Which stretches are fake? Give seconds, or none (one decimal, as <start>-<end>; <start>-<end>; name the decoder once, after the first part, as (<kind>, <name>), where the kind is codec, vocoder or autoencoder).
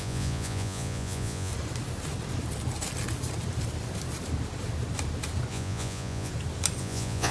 0.0-1.5 (vocoder, Vocos); 5.5-6.3; 6.8-7.3